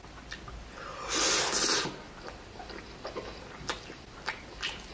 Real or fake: real